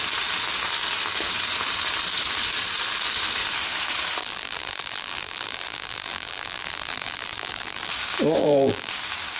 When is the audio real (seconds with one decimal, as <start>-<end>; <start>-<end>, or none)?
0.0-4.2; 7.9-8.4; 8.9-9.4